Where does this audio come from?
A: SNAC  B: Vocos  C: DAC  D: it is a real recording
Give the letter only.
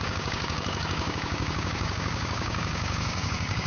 C